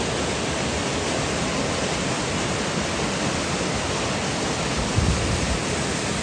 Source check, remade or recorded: recorded